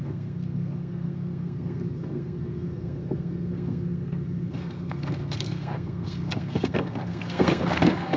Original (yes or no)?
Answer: no